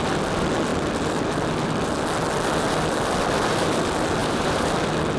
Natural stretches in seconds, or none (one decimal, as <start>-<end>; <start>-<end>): 0.0-4.2; 4.7-5.2